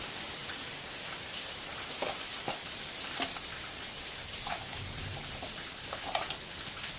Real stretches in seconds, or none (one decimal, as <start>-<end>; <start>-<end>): 0.0-0.4; 4.6-7.0